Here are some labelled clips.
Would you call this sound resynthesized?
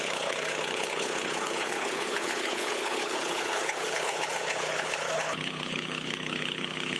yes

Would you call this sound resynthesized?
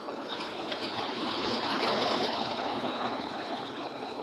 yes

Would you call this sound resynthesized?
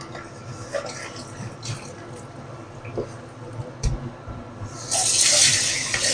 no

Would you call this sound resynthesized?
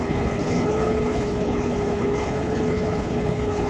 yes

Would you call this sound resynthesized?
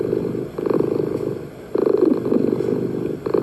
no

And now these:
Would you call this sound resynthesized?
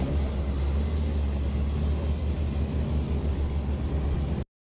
no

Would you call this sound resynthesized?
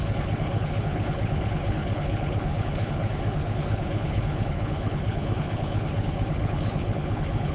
yes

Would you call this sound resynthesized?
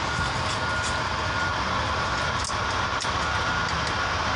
no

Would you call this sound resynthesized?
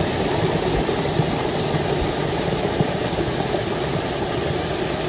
no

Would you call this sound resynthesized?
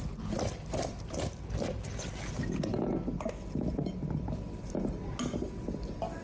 no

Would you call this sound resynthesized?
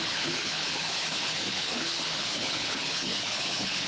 yes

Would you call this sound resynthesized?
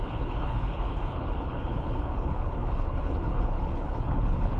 yes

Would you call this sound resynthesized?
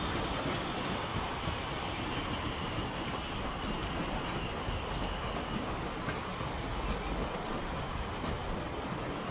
no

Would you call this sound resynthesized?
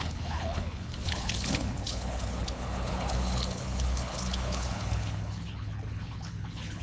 yes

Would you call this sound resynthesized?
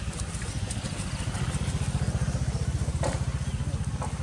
no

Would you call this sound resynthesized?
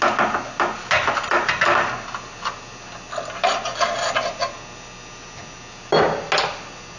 no